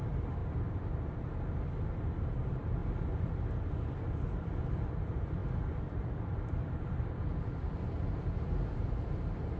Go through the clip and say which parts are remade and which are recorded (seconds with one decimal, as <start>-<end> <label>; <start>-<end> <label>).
0.0-0.4 remade; 0.4-1.0 recorded; 1.0-2.8 remade; 2.8-4.6 recorded; 4.6-9.6 remade